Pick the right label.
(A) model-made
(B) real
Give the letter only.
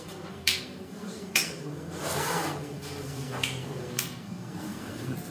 A